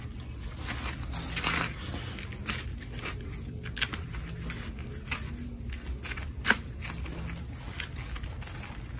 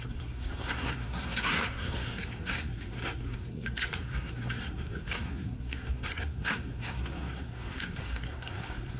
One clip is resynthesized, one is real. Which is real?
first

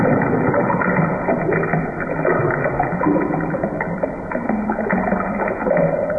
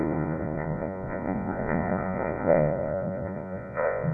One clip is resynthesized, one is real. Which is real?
first